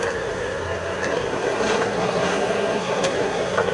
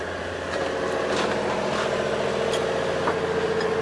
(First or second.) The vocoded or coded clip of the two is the first